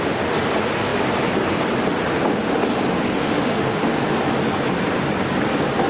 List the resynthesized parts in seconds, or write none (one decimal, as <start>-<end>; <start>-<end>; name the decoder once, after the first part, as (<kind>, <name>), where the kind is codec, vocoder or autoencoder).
3.1-4.1 (autoencoder, DAC-VAE)